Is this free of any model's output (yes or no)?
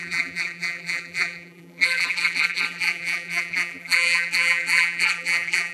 no